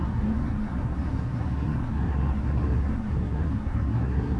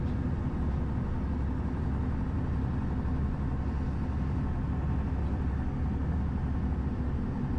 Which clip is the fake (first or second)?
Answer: first